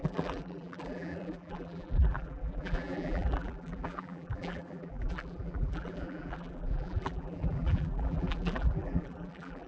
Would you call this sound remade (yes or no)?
yes